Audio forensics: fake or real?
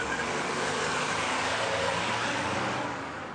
fake